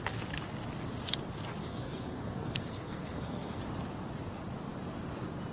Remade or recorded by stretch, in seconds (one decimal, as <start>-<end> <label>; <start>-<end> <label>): 0.0-1.6 recorded; 1.6-3.6 remade; 3.6-5.5 recorded